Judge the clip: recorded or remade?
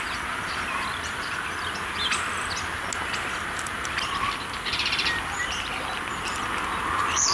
recorded